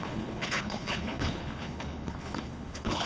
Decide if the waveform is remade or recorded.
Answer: remade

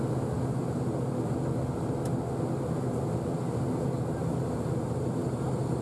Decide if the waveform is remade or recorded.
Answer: recorded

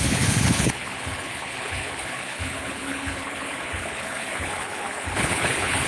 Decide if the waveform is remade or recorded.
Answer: remade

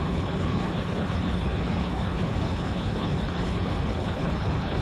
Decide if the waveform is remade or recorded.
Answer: remade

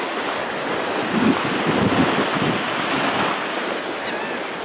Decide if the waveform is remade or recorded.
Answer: recorded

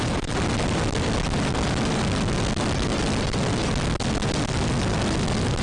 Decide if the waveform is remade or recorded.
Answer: recorded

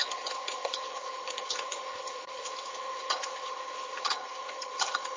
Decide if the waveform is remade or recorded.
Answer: remade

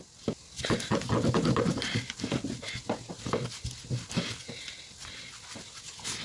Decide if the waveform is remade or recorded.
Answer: recorded